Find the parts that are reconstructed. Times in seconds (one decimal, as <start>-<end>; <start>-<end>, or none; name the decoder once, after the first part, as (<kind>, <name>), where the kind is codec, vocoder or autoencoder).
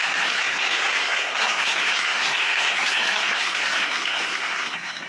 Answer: 0.0-5.1 (codec, SNAC)